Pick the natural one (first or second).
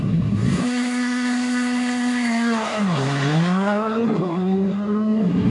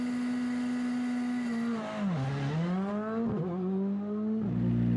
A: second